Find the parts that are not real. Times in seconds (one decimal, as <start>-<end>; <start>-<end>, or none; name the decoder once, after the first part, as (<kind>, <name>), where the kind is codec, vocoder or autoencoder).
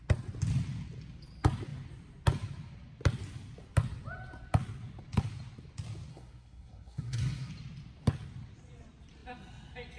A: 6.1-7.5 (codec, SNAC)